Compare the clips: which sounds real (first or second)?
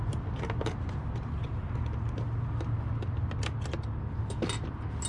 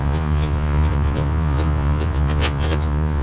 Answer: first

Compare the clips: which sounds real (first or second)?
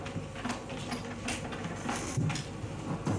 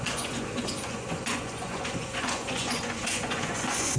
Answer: first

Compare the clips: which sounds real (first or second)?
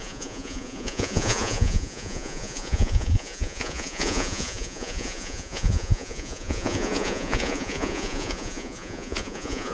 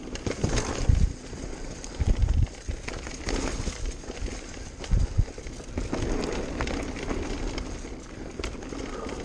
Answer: second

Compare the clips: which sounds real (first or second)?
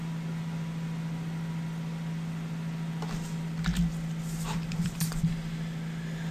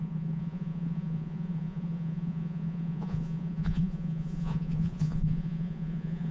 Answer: first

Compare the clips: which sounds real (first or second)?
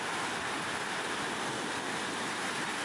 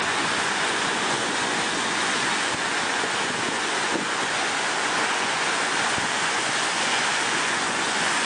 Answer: first